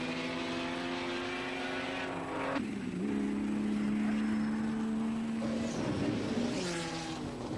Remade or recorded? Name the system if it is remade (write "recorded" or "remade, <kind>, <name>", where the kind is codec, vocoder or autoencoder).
recorded